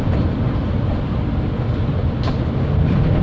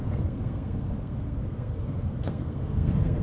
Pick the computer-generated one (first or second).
second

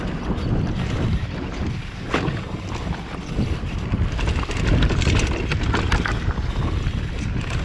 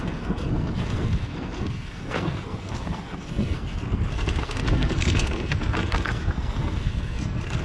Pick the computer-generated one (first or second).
second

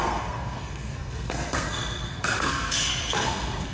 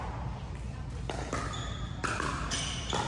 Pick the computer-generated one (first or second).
first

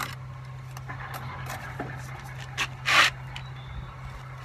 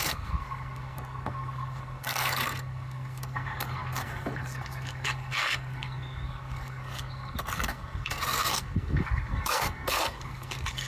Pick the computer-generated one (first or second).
second